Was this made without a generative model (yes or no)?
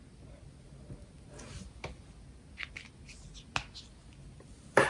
yes